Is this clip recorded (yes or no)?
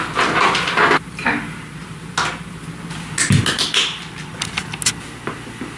yes